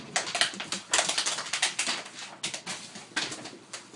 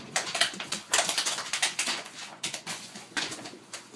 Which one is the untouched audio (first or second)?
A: first